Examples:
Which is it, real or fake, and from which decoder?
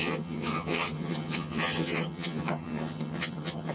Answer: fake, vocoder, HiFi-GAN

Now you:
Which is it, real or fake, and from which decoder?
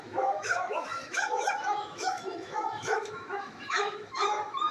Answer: fake, autoencoder, DAC-VAE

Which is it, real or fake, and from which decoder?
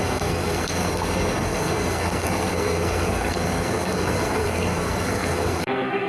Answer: fake, codec, SNAC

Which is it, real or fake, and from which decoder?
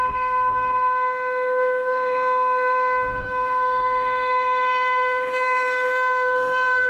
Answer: fake, autoencoder, DAC-VAE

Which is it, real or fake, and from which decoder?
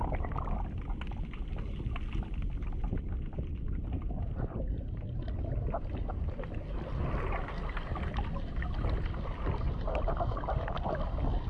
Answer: real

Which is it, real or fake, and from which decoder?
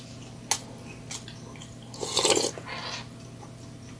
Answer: real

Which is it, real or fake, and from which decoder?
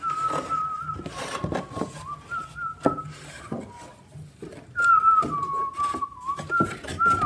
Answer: real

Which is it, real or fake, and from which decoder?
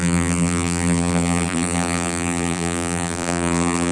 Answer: fake, vocoder, BigVGAN v2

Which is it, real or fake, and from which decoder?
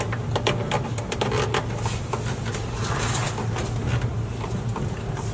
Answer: real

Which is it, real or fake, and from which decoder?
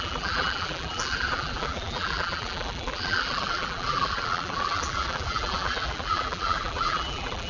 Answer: fake, vocoder, BigVGAN v2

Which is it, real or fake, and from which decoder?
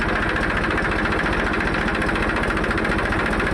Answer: real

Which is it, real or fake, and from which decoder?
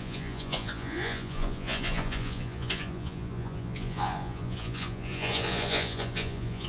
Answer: fake, vocoder, Vocos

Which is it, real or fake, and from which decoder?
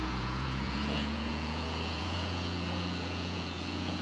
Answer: fake, vocoder, Vocos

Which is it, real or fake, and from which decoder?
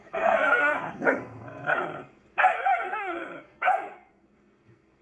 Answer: fake, codec, SNAC